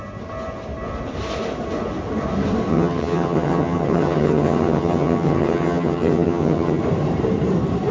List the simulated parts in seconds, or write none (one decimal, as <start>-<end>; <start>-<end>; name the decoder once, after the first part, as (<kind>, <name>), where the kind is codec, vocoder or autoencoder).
2.7-6.8 (vocoder, HiFi-GAN)